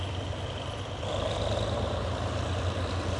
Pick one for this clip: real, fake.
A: real